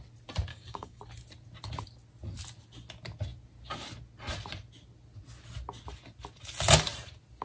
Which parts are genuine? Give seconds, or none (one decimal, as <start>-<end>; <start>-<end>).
0.0-0.5; 1.0-7.4